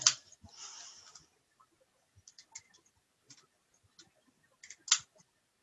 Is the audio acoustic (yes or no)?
yes